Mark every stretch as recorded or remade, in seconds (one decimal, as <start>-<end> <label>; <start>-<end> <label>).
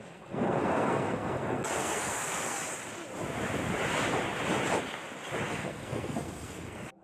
0.0-2.6 remade; 2.6-5.5 recorded; 5.5-7.0 remade